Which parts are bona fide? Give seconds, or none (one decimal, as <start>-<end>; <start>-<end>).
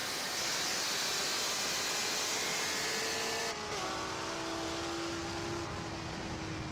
0.0-6.7